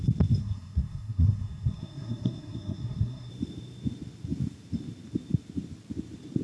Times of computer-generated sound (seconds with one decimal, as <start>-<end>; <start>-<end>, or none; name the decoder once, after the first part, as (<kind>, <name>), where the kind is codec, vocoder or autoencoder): 0.4-3.3 (codec, SNAC)